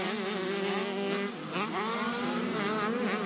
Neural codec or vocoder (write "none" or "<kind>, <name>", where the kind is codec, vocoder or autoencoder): none